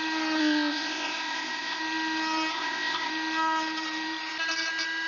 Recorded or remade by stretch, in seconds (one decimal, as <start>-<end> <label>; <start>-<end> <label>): 0.0-0.4 recorded; 0.4-1.8 remade; 1.8-2.5 recorded; 2.5-3.1 remade; 3.1-5.1 recorded